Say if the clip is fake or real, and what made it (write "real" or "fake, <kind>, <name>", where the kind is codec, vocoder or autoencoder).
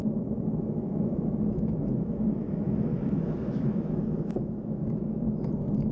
fake, autoencoder, DAC-VAE